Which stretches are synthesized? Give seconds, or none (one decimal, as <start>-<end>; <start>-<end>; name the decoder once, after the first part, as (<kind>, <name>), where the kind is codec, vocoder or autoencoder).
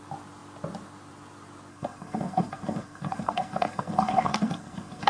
1.7-5.1 (codec, SNAC)